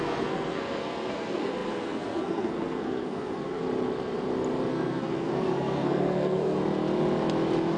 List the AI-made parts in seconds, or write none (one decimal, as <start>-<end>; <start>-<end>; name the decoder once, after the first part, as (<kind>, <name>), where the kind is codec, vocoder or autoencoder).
0.0-3.6 (codec, SNAC); 4.7-6.6